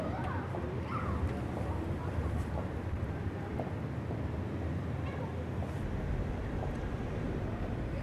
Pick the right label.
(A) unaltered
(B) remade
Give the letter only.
A